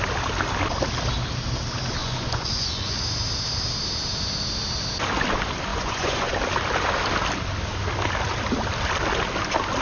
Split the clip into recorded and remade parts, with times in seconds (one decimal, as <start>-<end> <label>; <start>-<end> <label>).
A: 0.0-2.0 recorded; 2.0-3.0 remade; 3.0-5.7 recorded; 5.7-6.3 remade; 6.3-9.8 recorded